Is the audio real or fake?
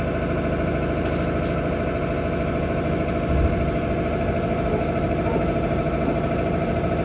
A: real